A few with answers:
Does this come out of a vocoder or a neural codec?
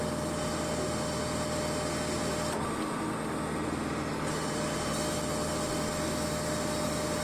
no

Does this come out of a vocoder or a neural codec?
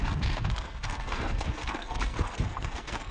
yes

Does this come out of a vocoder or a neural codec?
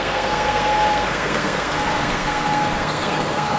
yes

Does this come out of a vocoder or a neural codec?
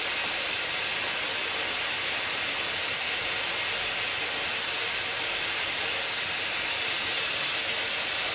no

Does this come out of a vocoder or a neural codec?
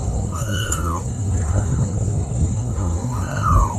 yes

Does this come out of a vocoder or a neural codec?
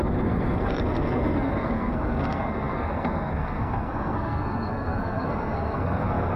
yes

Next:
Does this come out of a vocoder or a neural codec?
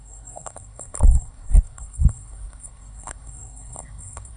yes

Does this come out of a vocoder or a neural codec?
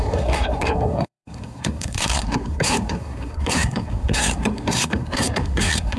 yes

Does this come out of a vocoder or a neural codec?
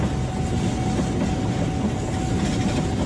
no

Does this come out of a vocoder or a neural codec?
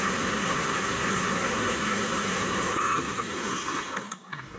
yes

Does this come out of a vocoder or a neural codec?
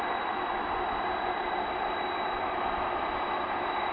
no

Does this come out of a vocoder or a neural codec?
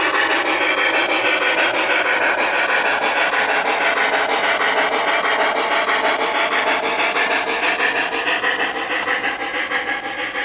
no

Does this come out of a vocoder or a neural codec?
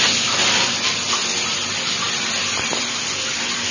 no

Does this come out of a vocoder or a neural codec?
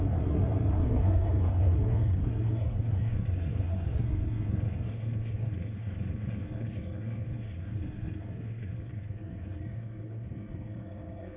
yes